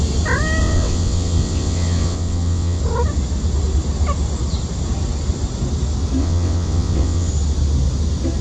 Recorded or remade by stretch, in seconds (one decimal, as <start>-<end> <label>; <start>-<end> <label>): 0.0-0.6 recorded; 0.6-2.8 remade; 2.8-6.2 recorded; 6.2-7.3 remade; 7.3-8.4 recorded